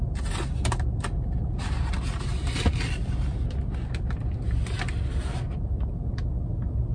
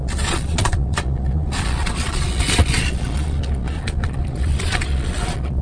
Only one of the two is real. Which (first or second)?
first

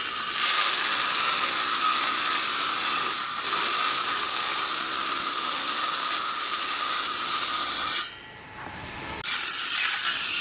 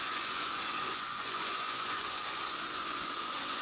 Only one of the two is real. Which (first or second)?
first